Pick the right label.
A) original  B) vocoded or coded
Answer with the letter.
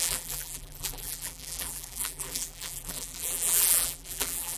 B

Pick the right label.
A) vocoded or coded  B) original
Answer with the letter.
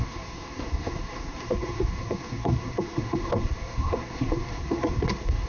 A